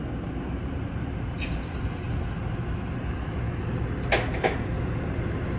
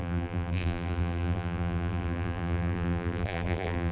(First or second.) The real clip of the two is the first